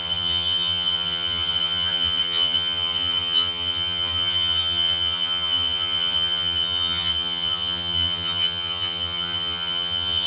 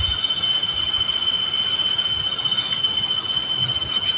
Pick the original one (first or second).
second